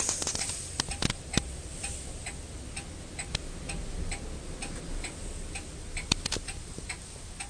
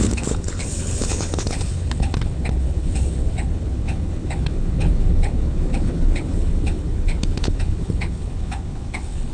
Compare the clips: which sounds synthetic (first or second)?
second